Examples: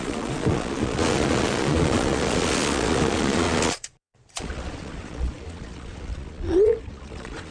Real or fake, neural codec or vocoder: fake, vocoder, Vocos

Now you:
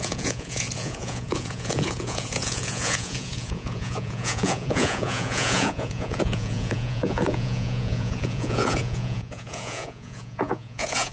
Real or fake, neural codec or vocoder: fake, vocoder, Vocos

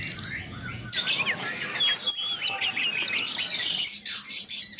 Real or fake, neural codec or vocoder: real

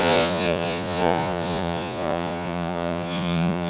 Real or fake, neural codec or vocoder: fake, vocoder, Vocos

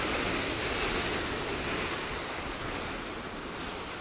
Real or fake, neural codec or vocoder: real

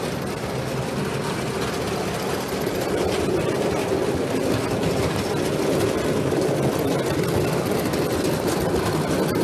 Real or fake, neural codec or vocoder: real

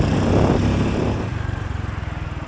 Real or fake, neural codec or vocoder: real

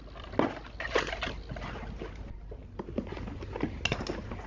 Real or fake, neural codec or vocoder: real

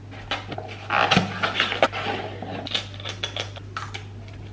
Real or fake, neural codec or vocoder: real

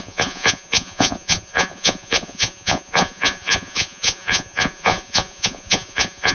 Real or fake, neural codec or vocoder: fake, vocoder, Vocos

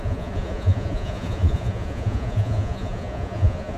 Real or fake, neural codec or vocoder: fake, vocoder, Vocos